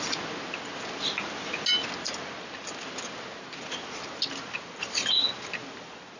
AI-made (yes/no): no